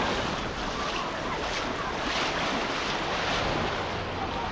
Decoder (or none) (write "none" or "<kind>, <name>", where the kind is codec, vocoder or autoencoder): none